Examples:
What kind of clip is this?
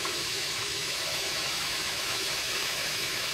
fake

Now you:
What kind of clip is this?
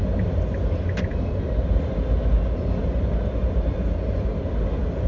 real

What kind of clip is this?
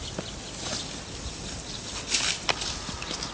real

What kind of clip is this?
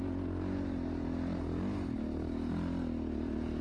real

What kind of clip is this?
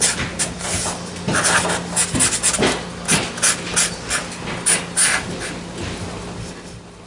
real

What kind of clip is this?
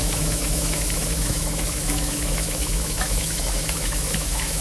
fake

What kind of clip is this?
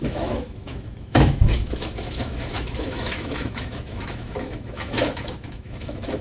fake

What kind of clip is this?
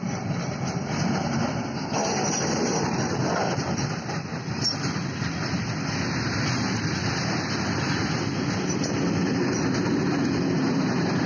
real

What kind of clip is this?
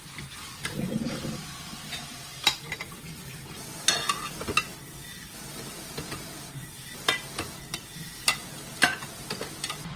real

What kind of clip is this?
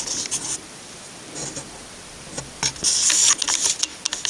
real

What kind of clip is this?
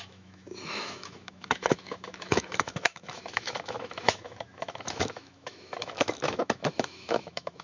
fake